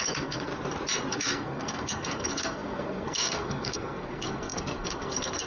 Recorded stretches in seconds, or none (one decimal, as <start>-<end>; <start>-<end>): 0.5-1.1